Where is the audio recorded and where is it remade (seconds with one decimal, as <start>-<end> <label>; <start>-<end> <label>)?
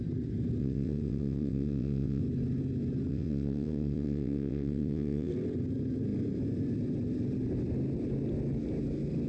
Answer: 0.0-0.6 recorded; 0.6-2.2 remade; 2.2-3.1 recorded; 3.1-5.3 remade; 5.3-9.3 recorded